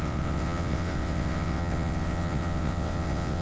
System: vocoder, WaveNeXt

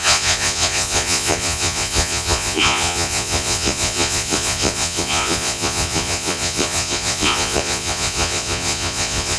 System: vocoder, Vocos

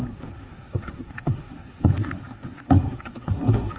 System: codec, SNAC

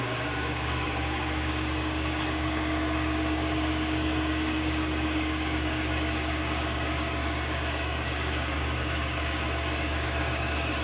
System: codec, DAC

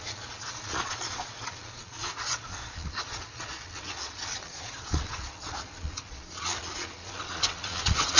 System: vocoder, Vocos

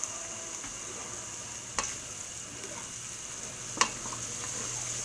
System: none